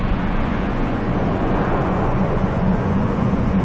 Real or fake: fake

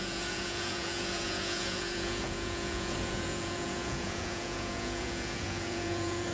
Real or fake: fake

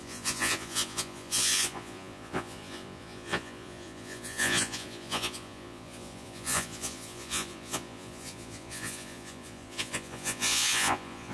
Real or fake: fake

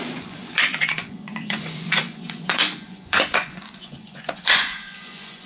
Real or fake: fake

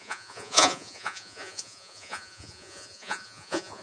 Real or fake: fake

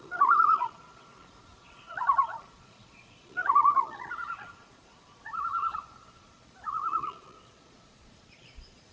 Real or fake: fake